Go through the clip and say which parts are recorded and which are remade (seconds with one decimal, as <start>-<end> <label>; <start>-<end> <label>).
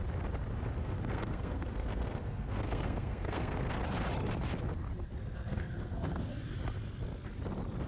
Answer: 0.0-0.8 recorded; 0.8-3.7 remade; 3.7-5.1 recorded; 5.1-6.3 remade; 6.3-7.9 recorded